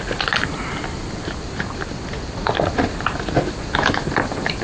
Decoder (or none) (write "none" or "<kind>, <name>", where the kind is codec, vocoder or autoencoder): none